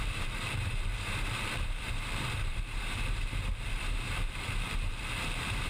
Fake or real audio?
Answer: fake